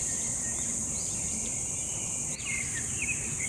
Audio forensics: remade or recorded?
remade